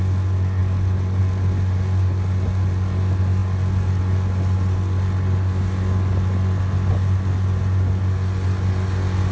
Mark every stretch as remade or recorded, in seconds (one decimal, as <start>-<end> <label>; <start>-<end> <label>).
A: 0.0-9.3 recorded